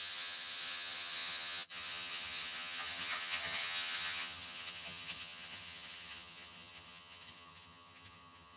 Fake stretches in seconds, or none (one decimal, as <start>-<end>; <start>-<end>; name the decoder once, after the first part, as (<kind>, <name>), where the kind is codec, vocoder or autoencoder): 0.0-8.6 (vocoder, HiFi-GAN)